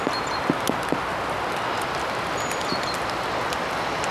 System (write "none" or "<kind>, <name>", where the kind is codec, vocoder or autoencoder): none